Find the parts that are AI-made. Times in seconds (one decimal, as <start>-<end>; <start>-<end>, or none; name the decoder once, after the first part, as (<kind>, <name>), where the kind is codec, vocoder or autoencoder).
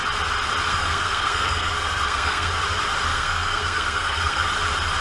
0.7-2.5 (codec, SNAC); 3.1-4.5